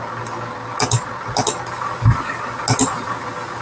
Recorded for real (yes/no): yes